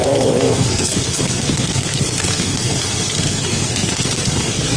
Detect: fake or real fake